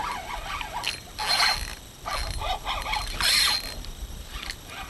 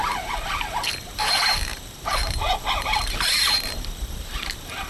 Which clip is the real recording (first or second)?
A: first